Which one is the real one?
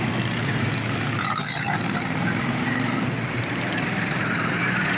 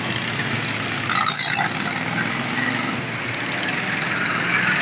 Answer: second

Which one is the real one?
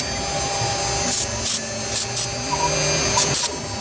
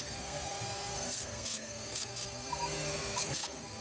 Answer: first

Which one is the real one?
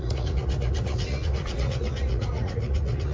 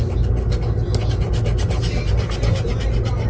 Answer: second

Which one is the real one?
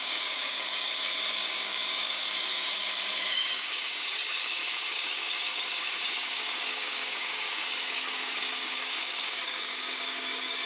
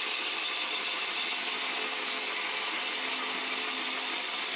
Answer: second